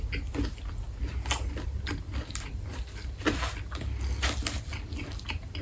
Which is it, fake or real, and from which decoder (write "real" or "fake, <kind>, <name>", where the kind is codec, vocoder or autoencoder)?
real